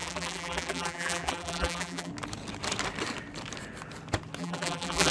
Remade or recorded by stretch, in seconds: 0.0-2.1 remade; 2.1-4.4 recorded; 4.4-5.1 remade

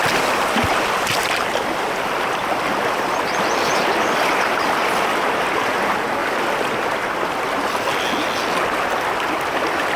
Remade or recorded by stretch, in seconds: 0.0-6.2 recorded; 6.2-7.1 remade; 7.1-10.0 recorded

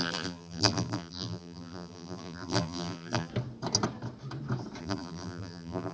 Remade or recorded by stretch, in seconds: 0.0-3.3 remade; 3.3-4.8 recorded; 4.8-5.9 remade